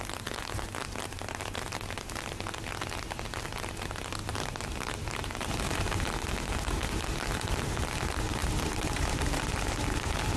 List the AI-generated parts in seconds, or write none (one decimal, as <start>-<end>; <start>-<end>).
4.2-6.1; 8.4-9.4